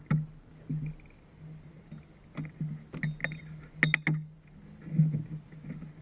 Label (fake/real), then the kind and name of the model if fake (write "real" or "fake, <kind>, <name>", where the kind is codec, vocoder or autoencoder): real